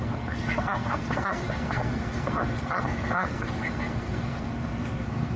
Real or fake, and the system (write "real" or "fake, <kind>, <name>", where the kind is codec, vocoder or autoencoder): fake, codec, SNAC